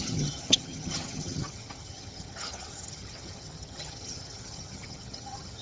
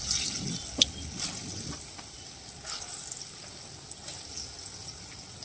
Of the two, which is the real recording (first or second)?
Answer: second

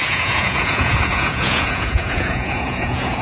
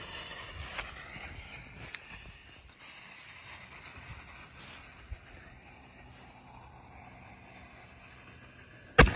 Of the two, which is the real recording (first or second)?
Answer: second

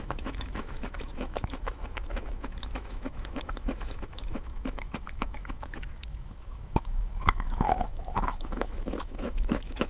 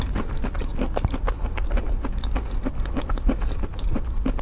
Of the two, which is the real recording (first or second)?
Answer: second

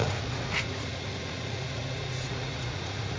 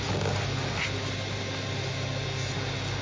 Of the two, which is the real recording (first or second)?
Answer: second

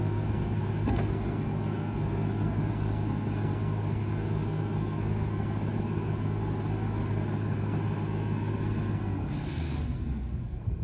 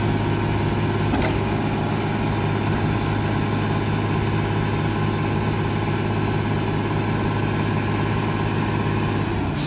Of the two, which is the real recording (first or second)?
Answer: second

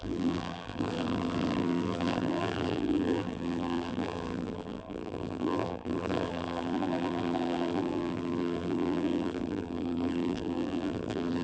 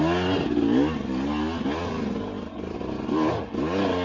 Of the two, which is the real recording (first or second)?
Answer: second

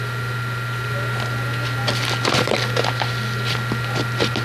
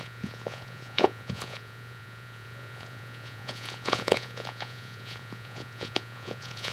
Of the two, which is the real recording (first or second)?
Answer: first